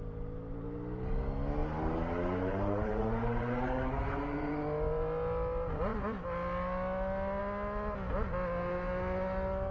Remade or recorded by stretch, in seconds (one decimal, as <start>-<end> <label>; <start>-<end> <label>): 0.0-1.6 recorded; 1.6-4.5 remade; 4.5-9.7 recorded